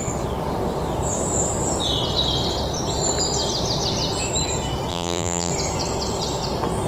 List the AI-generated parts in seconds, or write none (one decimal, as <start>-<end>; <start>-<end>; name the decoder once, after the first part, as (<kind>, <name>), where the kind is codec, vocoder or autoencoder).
4.9-5.5 (vocoder, BigVGAN v2)